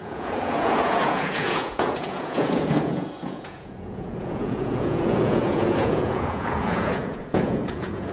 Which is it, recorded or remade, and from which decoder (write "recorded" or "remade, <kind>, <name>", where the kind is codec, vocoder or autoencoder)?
remade, vocoder, Vocos